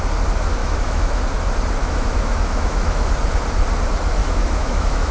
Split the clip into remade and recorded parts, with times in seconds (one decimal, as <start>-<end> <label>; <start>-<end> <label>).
0.0-0.6 recorded; 0.6-1.2 remade; 1.2-1.8 recorded; 1.8-3.1 remade; 3.1-4.2 recorded; 4.2-5.1 remade